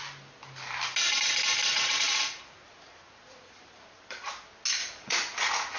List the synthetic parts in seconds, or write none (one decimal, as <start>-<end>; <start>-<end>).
1.7-3.4; 4.8-5.8

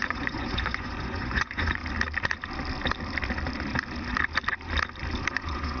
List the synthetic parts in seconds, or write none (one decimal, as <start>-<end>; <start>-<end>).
0.0-1.8; 5.3-5.8

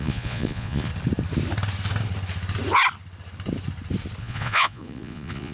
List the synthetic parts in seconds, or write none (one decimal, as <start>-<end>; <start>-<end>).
0.0-0.9; 4.2-5.5

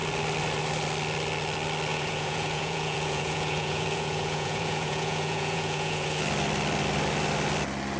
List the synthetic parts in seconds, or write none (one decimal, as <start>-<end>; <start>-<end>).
1.9-6.2

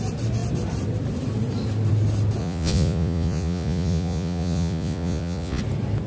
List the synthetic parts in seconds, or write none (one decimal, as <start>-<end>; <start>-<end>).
2.4-5.6

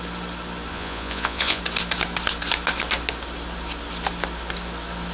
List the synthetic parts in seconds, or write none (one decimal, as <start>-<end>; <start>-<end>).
0.7-1.6